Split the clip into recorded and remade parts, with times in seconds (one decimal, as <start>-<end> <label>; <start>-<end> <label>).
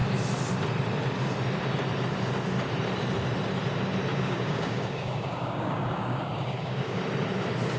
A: 0.0-4.1 recorded; 4.1-7.0 remade; 7.0-7.8 recorded